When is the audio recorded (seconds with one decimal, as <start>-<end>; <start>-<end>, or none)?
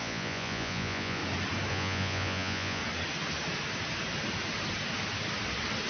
1.2-1.7; 2.8-5.9